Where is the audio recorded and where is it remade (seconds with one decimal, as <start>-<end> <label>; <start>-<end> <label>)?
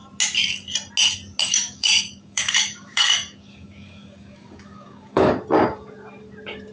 0.0-1.4 recorded; 1.4-5.3 remade; 5.3-6.7 recorded